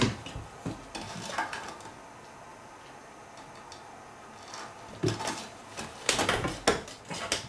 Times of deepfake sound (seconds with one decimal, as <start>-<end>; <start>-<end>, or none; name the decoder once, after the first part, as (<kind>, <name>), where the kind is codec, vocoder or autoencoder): none